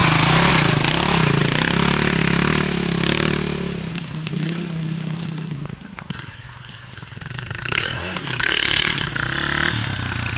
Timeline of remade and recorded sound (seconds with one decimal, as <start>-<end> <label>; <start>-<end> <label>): 0.0-3.9 recorded; 3.9-9.1 remade; 9.1-10.4 recorded